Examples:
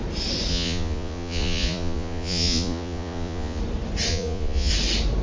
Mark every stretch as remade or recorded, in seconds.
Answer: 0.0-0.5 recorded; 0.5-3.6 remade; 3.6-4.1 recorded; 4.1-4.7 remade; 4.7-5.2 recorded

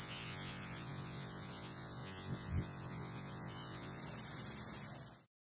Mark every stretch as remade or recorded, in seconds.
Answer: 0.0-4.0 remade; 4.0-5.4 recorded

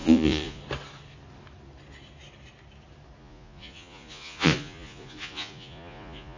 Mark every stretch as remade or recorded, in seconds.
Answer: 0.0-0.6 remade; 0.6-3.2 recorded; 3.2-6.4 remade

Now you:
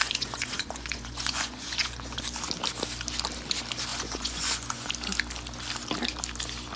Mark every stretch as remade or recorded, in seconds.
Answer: 0.0-2.2 remade; 2.2-3.9 recorded; 3.9-4.9 remade; 4.9-6.8 recorded